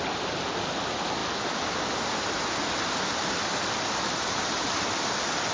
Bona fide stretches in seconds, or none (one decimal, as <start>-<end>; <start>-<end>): 0.0-5.5